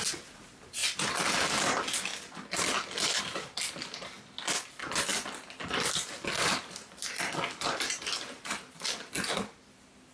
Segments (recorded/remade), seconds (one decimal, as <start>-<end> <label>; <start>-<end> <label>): 0.0-10.1 recorded